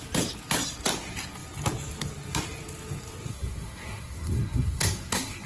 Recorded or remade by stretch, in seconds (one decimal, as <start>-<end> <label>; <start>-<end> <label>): 0.0-3.3 recorded; 3.3-5.5 remade